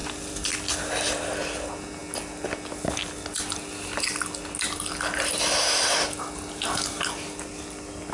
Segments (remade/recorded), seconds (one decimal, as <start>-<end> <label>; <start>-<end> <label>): 0.0-8.1 recorded